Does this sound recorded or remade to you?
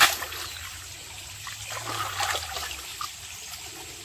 recorded